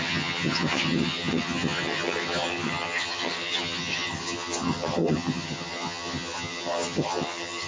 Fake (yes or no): yes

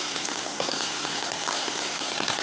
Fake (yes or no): yes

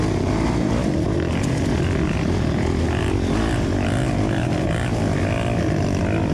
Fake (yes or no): no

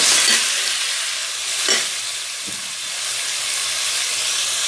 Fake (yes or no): no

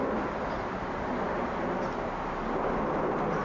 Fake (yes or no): no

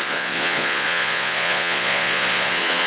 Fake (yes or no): yes